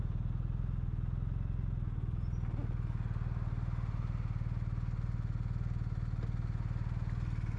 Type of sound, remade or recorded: recorded